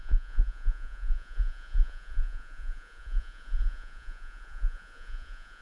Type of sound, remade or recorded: remade